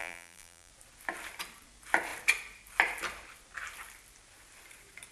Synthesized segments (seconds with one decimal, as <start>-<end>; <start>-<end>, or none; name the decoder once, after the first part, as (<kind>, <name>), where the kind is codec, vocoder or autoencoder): 0.0-0.7 (vocoder, BigVGAN v2)